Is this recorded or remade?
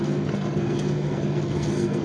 remade